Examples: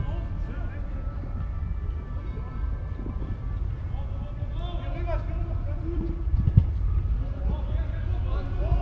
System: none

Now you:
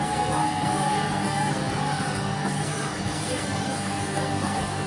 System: codec, SNAC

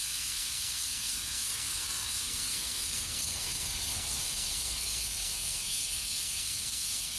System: codec, SNAC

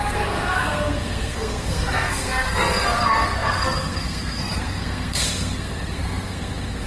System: codec, SNAC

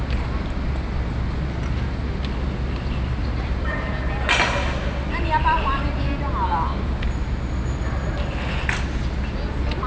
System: none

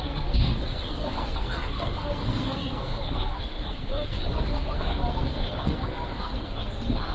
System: codec, SNAC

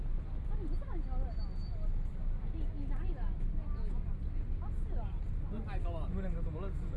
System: none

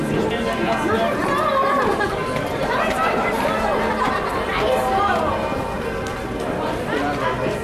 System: none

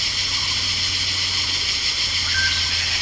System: none